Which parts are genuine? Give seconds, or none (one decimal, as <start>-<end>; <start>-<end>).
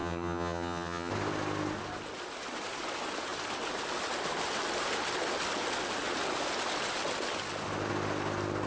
1.1-8.7